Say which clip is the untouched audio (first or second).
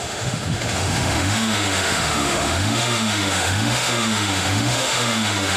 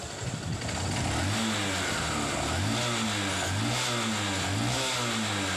second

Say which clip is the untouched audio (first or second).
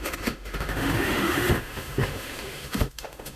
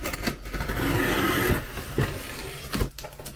second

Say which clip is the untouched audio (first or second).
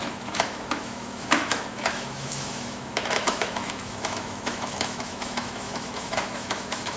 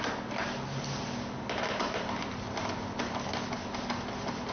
second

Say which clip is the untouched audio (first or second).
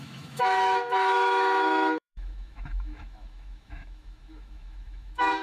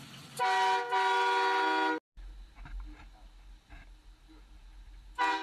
second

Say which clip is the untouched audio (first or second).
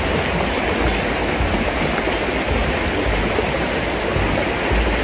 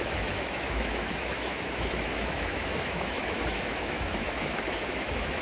first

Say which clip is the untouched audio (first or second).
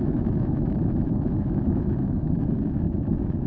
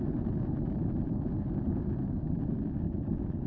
second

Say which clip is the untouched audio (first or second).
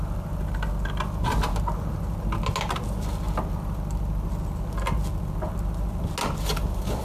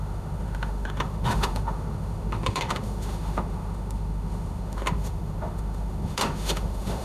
first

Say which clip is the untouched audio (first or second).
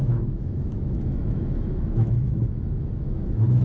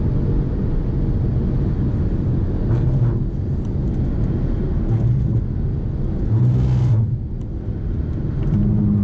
second